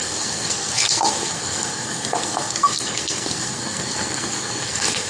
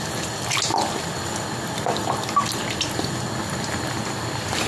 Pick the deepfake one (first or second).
first